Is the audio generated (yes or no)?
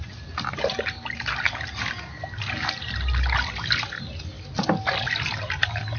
no